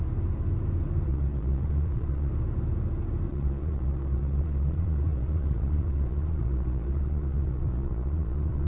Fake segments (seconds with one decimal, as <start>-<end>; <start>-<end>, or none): 1.1-2.3; 3.3-8.7